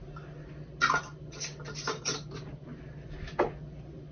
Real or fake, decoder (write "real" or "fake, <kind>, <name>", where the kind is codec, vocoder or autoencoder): real